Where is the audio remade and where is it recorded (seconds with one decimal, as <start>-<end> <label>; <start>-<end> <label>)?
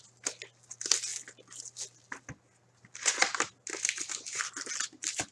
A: 0.0-5.3 recorded